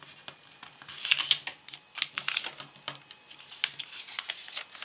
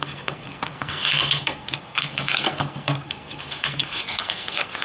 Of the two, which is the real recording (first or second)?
first